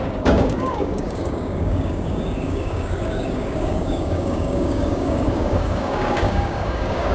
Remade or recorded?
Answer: remade